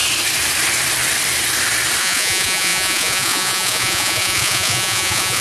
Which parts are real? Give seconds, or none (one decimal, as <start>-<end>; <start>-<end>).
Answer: 0.0-2.0